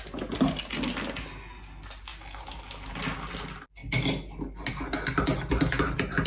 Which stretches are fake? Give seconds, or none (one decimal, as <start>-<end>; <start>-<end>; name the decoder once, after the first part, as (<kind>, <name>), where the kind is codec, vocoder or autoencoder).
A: none